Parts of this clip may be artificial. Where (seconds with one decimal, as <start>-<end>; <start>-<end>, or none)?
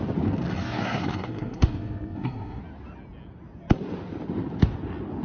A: 0.6-2.6